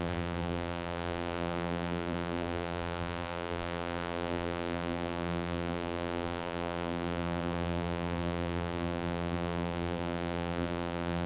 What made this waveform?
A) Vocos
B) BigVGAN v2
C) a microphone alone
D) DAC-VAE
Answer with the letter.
B